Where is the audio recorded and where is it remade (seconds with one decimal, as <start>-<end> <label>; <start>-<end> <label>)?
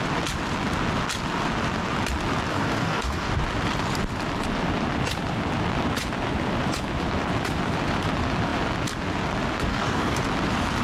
0.0-2.5 recorded; 2.5-3.3 remade; 3.3-9.7 recorded; 9.7-10.2 remade; 10.2-10.8 recorded